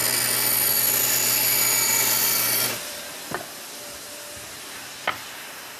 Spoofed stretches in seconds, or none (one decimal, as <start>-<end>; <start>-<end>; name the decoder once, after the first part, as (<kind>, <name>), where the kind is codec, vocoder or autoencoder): 1.9-5.8 (vocoder, BigVGAN v2)